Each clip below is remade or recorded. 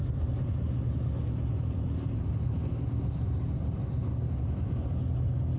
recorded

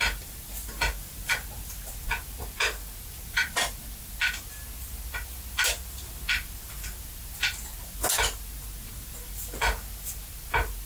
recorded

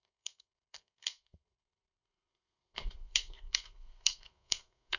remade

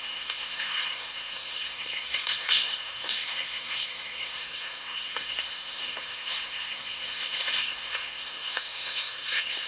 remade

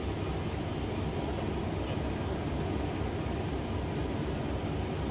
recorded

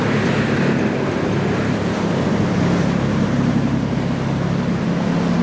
recorded